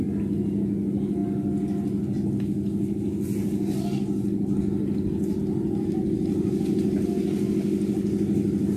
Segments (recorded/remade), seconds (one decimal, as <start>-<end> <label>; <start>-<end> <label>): 0.0-8.8 recorded